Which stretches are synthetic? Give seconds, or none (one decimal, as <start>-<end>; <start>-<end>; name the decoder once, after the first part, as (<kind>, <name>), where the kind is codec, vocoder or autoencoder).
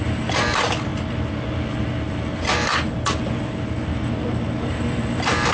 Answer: none